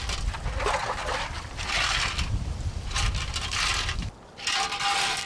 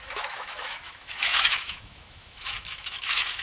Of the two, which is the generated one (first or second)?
second